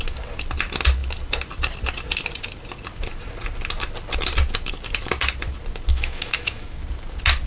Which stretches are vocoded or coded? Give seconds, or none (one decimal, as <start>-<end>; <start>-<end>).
5.9-6.8